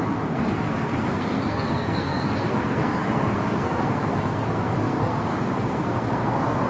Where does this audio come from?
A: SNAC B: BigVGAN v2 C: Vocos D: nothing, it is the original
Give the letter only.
A